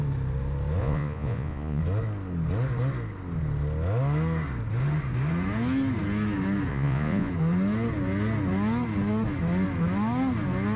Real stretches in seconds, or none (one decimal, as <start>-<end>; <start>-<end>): 0.0-0.8; 1.8-6.7; 7.3-10.8